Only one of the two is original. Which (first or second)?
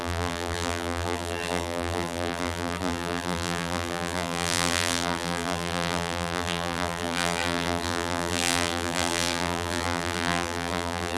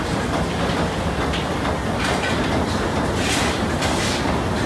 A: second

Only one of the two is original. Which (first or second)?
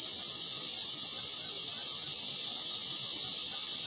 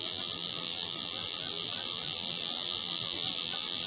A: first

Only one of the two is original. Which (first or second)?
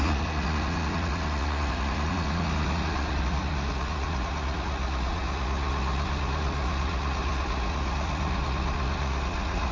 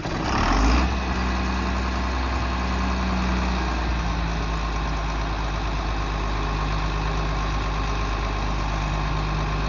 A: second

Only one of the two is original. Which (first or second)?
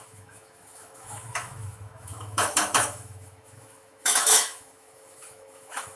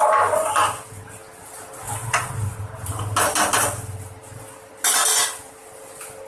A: second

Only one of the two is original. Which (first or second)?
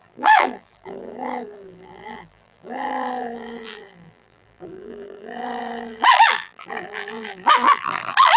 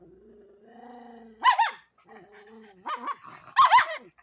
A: second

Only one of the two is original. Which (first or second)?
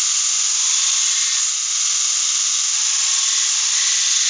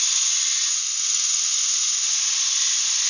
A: first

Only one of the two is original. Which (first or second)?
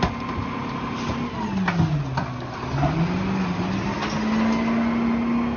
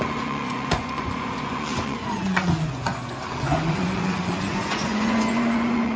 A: first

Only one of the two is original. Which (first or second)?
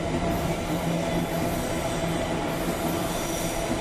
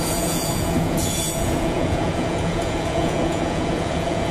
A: first